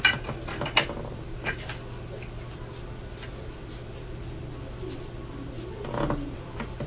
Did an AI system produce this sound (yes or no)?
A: no